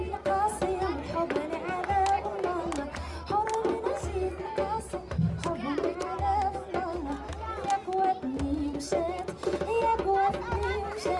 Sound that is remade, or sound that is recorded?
recorded